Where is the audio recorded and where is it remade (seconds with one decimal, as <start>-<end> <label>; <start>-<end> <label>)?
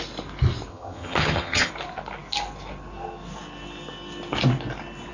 0.0-0.7 recorded; 0.7-1.7 remade; 1.7-5.1 recorded